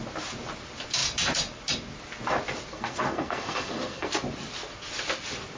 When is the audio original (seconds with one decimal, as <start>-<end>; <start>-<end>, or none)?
0.0-2.7; 4.1-5.6